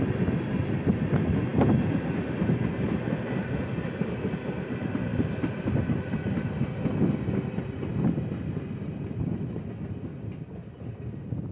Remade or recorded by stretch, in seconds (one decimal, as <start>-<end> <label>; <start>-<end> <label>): 0.0-11.5 recorded